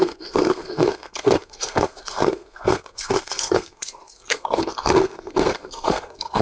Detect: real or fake fake